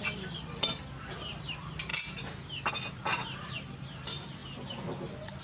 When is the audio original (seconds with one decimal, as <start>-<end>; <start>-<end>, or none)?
0.0-1.0; 1.9-2.7; 4.4-5.4